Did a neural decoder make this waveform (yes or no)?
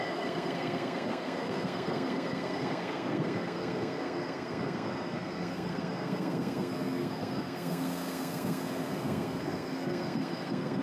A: yes